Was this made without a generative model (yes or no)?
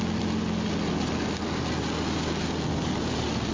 yes